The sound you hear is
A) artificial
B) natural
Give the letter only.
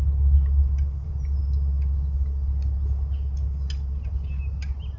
B